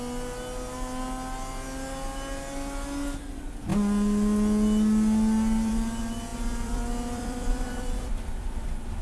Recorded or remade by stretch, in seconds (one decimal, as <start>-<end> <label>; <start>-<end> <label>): 0.0-6.3 recorded; 6.3-8.3 remade; 8.3-9.0 recorded